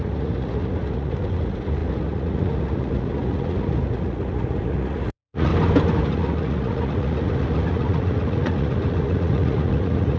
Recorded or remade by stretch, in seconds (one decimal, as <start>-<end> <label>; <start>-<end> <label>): 0.0-5.5 remade; 5.5-6.0 recorded; 6.0-10.2 remade